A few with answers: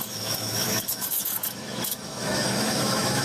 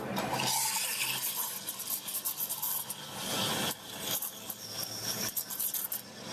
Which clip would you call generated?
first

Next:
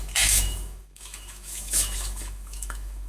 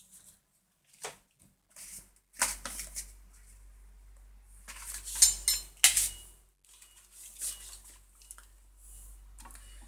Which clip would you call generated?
first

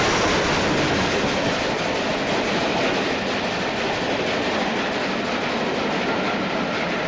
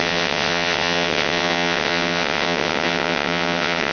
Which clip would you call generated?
second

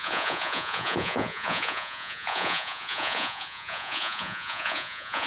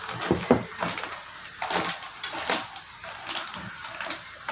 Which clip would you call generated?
first